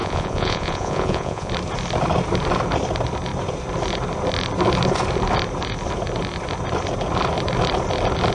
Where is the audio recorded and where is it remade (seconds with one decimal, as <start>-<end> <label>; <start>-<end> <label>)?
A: 0.0-1.5 remade; 1.5-8.3 recorded